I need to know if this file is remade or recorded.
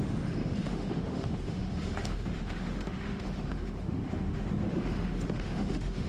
remade